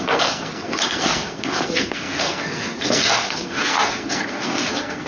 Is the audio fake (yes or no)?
yes